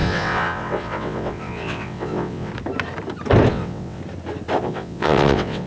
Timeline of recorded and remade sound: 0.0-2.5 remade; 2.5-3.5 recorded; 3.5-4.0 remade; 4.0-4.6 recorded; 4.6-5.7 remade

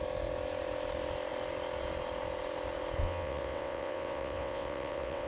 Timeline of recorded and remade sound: 0.0-3.0 recorded; 3.0-5.3 remade

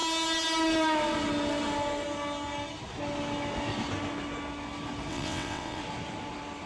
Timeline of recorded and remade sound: 0.0-5.1 recorded; 5.1-5.8 remade; 5.8-6.7 recorded

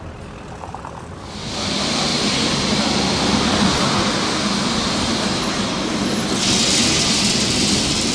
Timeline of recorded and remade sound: 0.0-8.1 recorded

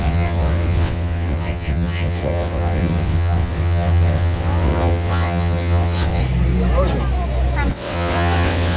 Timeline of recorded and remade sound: 0.0-6.2 remade; 6.2-7.7 recorded; 7.7-8.8 remade

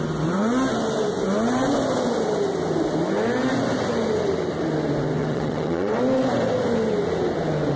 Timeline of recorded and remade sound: 0.0-5.2 recorded; 5.2-6.0 remade; 6.0-7.8 recorded